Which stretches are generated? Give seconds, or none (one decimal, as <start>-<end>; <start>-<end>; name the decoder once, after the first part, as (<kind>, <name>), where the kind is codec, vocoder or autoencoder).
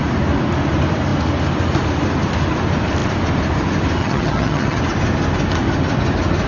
4.0-4.8 (vocoder, HiFi-GAN)